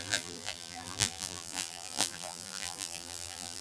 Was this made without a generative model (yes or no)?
no